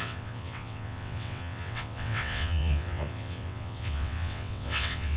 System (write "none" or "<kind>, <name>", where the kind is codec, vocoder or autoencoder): vocoder, WaveNeXt